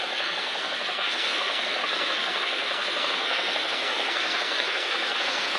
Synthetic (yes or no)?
yes